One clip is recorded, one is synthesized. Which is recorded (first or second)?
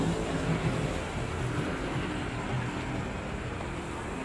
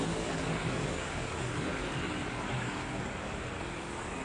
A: first